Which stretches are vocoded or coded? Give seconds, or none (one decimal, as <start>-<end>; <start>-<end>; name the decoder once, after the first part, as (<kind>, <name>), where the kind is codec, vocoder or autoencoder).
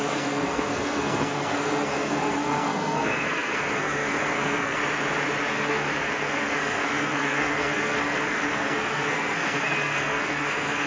0.0-4.8 (codec, SNAC); 5.5-10.9